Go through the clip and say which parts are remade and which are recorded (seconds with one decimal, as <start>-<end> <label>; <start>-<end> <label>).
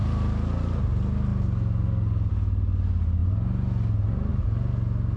0.0-5.2 recorded